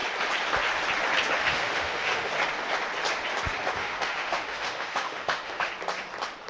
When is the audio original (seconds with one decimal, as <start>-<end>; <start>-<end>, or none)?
0.0-1.4; 2.3-3.8; 5.7-6.5